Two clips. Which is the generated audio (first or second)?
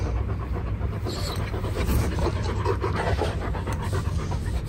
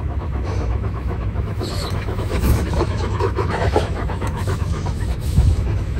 second